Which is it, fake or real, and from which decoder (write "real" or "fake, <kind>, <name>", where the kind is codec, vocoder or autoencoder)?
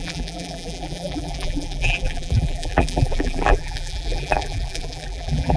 fake, vocoder, BigVGAN v2